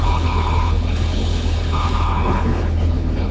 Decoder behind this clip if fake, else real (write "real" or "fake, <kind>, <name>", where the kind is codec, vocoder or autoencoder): fake, codec, HILCodec